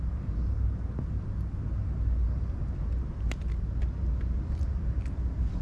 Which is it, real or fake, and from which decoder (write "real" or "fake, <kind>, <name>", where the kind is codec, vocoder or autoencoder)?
real